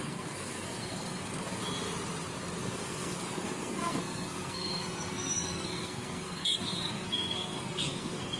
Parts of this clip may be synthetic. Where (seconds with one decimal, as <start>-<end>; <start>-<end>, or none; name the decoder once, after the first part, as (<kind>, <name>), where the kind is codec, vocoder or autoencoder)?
0.0-1.6 (codec, SNAC); 2.6-8.4